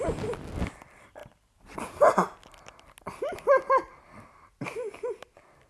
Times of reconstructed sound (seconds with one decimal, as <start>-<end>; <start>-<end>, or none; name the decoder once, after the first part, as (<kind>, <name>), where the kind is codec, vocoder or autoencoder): none